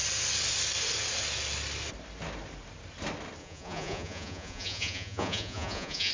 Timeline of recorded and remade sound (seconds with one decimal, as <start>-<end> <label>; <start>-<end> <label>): 0.0-3.4 recorded; 3.4-6.1 remade